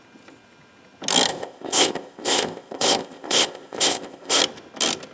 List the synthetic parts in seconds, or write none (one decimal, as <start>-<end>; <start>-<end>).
1.3-4.4